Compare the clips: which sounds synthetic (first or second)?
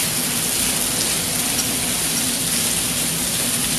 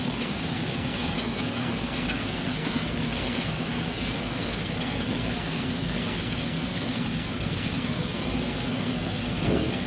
second